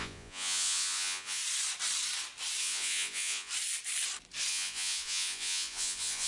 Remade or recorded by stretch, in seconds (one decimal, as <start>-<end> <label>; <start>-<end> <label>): 0.0-1.4 remade; 1.4-2.6 recorded; 2.6-3.5 remade; 3.5-4.5 recorded; 4.5-6.3 remade